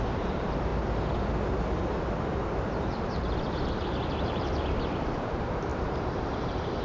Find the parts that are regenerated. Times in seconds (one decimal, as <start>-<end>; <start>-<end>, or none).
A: 0.0-0.7; 1.8-6.8